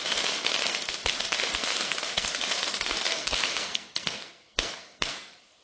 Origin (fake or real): fake